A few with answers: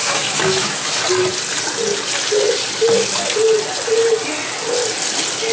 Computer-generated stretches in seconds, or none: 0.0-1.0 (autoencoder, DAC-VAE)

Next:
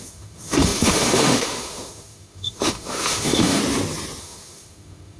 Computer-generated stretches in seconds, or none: 0.0-3.6 (autoencoder, DAC-VAE); 4.2-5.2

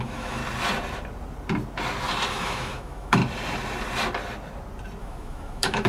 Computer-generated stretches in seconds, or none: 0.0-0.4 (autoencoder, DAC-VAE); 2.3-3.2; 5.0-5.9

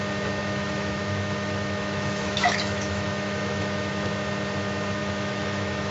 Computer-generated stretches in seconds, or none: 0.4-3.9 (autoencoder, DAC-VAE); 5.0-5.9

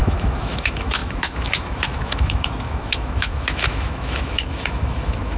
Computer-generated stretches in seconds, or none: 0.0-5.4 (autoencoder, DAC-VAE)